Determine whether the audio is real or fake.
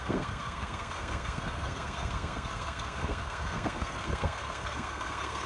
fake